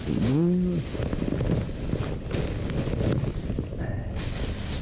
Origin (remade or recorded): recorded